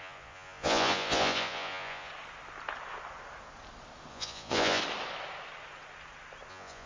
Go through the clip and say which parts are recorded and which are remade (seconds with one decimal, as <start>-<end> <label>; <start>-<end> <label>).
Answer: 0.0-2.1 remade; 2.1-4.1 recorded; 4.1-4.8 remade; 4.8-6.5 recorded; 6.5-6.9 remade